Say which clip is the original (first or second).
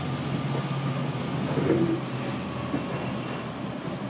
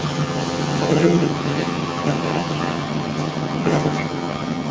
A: first